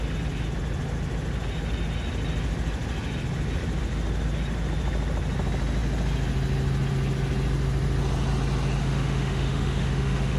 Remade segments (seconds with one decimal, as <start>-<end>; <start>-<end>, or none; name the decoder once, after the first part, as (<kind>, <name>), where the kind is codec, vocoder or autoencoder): 8.8-10.4 (autoencoder, DAC-VAE)